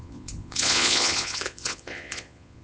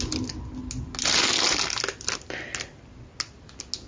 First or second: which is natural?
second